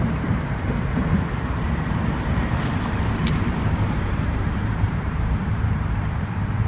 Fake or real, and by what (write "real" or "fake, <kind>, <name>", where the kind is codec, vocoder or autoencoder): fake, vocoder, BigVGAN v2